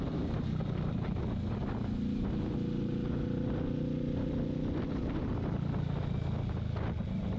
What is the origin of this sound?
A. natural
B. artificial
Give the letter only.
A